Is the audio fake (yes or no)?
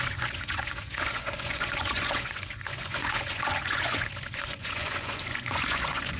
yes